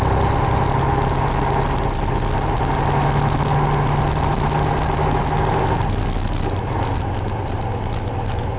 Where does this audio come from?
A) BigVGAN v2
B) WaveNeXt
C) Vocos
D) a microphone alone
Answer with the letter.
D